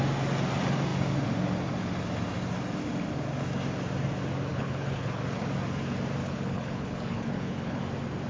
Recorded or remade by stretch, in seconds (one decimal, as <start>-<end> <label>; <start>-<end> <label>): 0.0-4.5 recorded; 4.5-5.2 remade; 5.2-6.2 recorded; 6.2-7.8 remade; 7.8-8.3 recorded

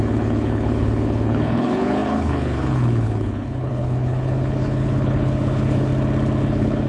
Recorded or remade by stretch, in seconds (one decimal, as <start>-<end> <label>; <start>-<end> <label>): 0.0-5.9 remade; 5.9-6.4 recorded; 6.4-6.9 remade

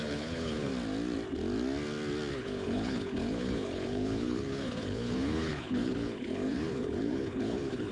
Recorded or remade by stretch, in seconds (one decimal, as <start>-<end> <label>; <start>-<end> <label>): 0.0-0.7 remade; 0.7-2.3 recorded; 2.3-7.9 remade